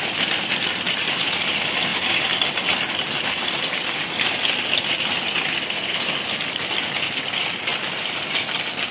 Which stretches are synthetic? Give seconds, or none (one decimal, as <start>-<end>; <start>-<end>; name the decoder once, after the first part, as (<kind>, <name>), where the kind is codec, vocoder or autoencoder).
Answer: none